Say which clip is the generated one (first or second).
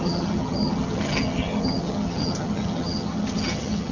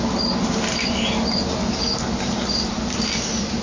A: first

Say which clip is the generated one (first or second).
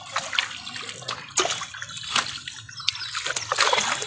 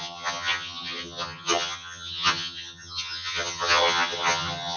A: second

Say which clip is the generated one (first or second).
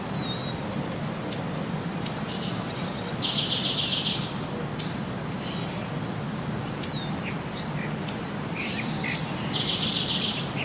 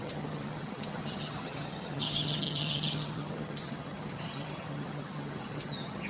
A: second